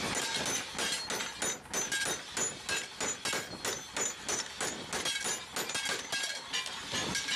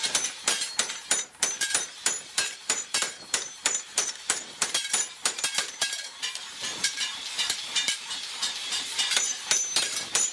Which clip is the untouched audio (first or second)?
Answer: first